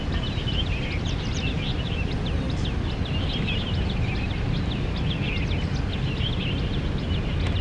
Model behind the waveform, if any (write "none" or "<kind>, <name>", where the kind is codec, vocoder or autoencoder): none